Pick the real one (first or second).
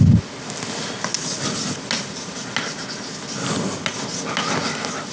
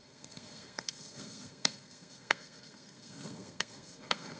first